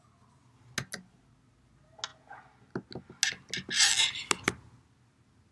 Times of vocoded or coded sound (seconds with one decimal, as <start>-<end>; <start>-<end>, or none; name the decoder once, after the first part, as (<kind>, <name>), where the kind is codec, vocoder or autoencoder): none